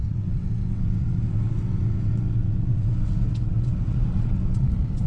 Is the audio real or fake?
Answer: fake